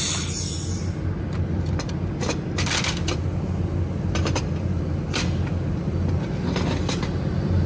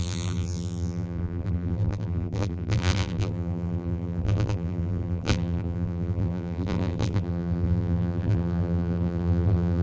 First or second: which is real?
first